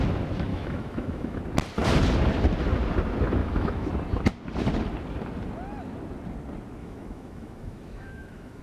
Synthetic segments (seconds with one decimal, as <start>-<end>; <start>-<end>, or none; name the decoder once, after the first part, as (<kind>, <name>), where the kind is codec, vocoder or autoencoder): 0.5-1.4 (autoencoder, DAC-VAE); 3.4-3.9; 6.8-8.6